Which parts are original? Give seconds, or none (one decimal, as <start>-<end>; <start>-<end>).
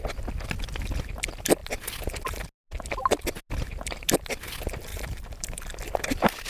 0.0-4.9; 5.6-6.5